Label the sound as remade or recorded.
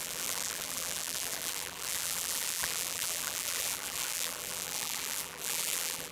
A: remade